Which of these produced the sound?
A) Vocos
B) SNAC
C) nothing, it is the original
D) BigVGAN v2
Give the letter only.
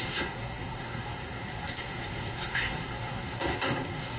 B